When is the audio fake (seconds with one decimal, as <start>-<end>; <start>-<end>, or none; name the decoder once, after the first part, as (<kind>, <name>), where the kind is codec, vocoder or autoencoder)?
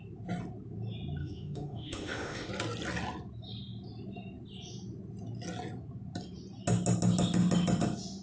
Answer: 1.2-2.5 (autoencoder, DAC-VAE)